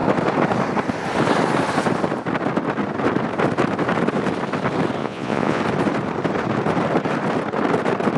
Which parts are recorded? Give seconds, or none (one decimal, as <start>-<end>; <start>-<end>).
0.0-5.0; 5.6-8.2